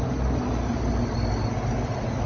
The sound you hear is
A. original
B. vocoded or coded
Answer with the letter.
A